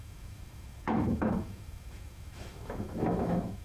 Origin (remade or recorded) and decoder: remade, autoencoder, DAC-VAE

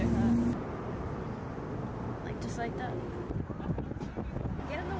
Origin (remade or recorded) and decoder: recorded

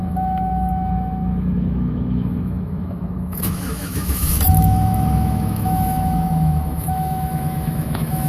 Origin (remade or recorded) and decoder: remade, autoencoder, DAC-VAE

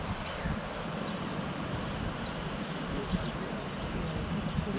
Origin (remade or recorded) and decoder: recorded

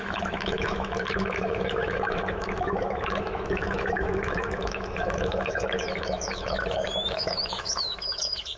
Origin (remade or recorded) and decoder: remade, autoencoder, DAC-VAE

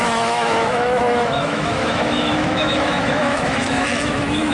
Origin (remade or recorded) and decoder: remade, autoencoder, DAC-VAE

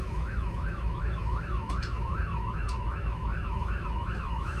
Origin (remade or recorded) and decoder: remade, autoencoder, DAC-VAE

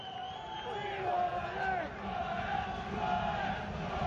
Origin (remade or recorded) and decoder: recorded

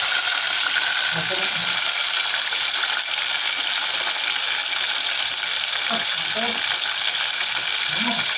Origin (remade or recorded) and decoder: recorded